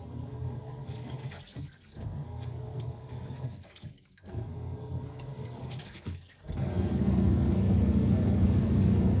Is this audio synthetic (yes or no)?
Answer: yes